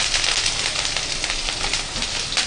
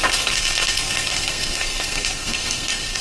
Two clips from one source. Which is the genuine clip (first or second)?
first